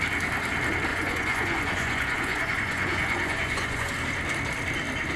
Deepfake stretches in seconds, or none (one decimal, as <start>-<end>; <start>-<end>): 0.9-3.9